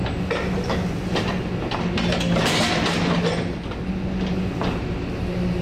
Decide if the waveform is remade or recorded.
recorded